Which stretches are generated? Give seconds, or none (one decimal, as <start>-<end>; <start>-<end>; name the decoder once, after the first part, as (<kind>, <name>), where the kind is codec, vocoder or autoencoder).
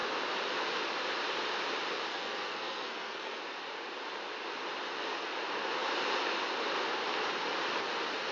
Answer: 2.1-3.4 (codec, SNAC)